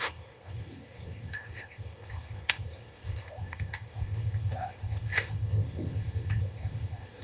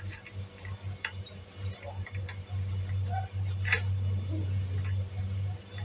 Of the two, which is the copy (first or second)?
first